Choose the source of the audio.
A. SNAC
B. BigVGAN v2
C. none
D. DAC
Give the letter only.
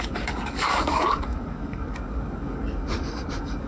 D